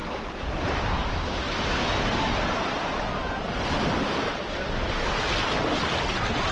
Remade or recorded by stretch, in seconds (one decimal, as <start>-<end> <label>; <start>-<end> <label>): 0.0-6.5 recorded